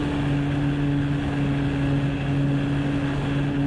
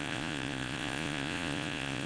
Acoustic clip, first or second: first